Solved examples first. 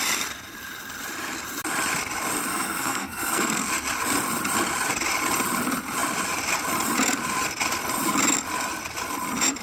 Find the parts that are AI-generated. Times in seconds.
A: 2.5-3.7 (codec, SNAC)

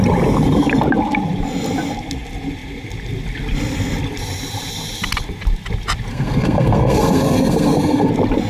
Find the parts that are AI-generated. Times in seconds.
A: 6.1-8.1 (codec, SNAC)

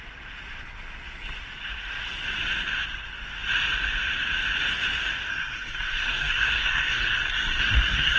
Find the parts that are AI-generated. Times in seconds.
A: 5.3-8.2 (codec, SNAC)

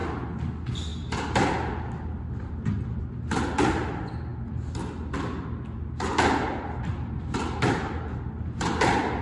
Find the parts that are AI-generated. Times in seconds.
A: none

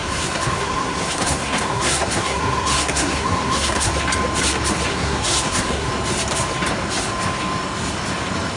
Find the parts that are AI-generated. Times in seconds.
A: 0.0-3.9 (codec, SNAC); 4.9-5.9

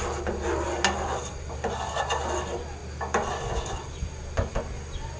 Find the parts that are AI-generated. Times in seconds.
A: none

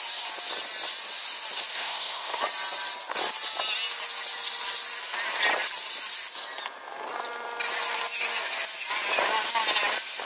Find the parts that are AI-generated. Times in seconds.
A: 1.7-2.4 (codec, SNAC)

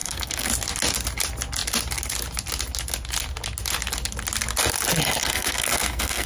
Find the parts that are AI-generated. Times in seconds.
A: 0.0-0.5 (codec, SNAC); 5.2-6.3